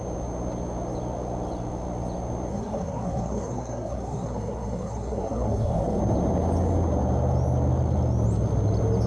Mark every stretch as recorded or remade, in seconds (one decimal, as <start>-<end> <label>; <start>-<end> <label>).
0.0-2.5 recorded; 2.5-6.0 remade; 6.0-9.1 recorded